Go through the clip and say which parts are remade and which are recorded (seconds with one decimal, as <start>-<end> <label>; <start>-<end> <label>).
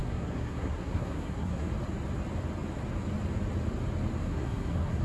0.0-1.7 remade; 1.7-4.2 recorded; 4.2-5.0 remade